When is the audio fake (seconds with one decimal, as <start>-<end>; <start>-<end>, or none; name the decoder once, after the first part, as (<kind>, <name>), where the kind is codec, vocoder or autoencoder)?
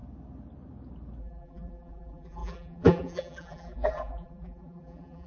1.2-5.3 (vocoder, BigVGAN v2)